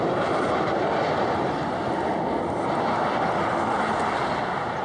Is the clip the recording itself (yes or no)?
yes